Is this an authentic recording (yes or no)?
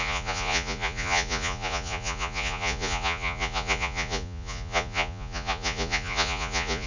no